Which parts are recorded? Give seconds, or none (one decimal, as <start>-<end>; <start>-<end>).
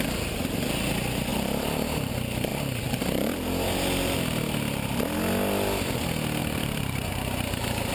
0.0-1.3; 2.1-6.4; 7.1-7.9